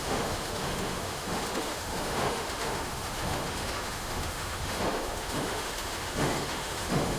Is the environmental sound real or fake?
fake